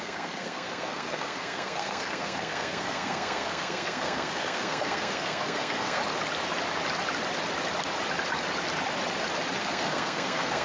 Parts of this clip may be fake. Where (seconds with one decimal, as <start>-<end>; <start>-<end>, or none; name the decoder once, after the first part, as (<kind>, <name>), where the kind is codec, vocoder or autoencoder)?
0.0-6.0 (codec, SNAC); 9.6-10.6